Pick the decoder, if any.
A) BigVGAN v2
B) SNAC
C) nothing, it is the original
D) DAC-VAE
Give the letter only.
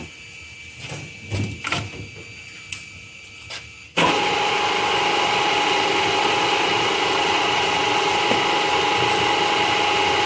C